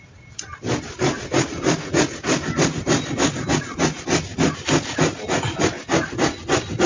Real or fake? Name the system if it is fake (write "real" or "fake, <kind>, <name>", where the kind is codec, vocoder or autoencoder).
real